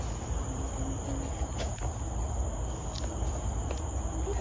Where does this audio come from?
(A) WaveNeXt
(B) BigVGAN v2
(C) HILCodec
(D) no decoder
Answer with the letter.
D